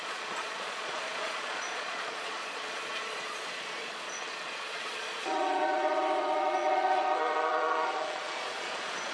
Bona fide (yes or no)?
no